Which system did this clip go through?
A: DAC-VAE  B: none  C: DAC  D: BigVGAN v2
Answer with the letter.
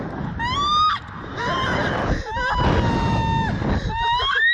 B